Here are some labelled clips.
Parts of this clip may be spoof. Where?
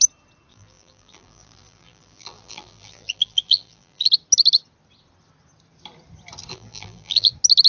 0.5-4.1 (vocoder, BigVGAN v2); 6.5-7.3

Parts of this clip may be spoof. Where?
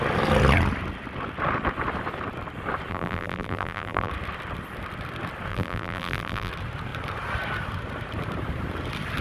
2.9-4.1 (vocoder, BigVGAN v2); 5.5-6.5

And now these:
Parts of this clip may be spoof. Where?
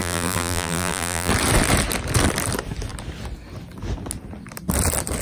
0.0-1.3 (vocoder, BigVGAN v2)